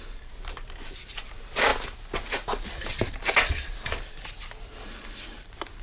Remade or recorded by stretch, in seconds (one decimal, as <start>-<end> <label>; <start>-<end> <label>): 0.0-5.8 recorded